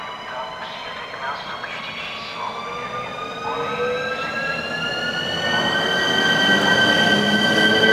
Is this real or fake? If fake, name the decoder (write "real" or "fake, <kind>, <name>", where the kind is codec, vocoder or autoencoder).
real